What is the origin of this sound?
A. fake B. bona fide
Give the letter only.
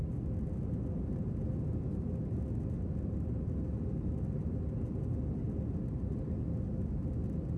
B